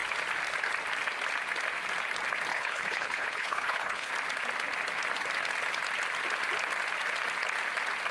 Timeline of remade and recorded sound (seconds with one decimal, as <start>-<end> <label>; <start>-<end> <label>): 0.0-2.5 recorded; 2.5-4.1 remade; 4.1-8.1 recorded